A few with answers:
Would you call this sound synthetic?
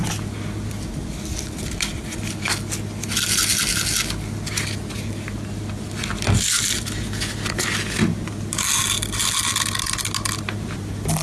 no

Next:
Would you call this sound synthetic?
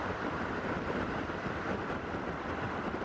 yes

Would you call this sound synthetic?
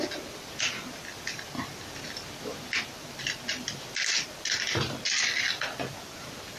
no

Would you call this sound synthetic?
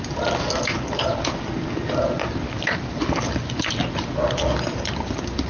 no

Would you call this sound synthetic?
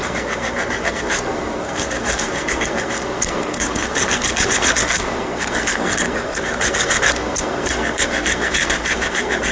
yes